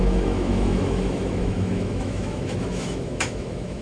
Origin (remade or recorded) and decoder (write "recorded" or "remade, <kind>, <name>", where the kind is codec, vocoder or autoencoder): remade, autoencoder, DAC-VAE